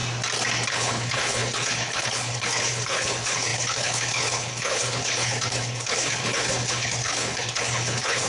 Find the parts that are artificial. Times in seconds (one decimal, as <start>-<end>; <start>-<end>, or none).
0.7-8.3